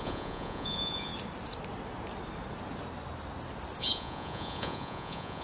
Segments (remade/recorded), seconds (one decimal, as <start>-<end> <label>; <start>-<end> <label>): 0.0-1.1 remade; 1.1-3.8 recorded; 3.8-5.4 remade